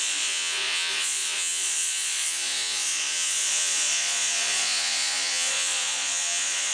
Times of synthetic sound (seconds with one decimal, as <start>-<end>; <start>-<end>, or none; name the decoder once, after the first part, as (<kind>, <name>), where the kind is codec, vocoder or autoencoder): 0.0-6.7 (vocoder, Vocos)